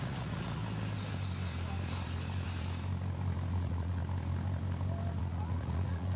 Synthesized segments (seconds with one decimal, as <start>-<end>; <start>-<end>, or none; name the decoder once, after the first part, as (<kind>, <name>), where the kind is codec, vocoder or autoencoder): 0.0-0.6 (vocoder, Vocos); 3.5-4.0; 5.2-6.2